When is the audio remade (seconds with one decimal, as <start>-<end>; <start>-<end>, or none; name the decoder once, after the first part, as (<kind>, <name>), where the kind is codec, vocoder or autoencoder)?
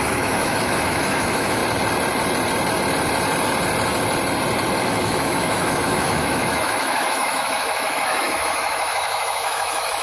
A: 0.0-1.6 (autoencoder, DAC-VAE); 4.8-10.0